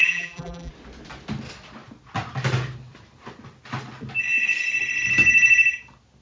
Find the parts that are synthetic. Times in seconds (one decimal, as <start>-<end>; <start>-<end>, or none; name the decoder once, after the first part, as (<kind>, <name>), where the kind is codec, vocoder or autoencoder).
0.0-0.7 (vocoder, BigVGAN v2)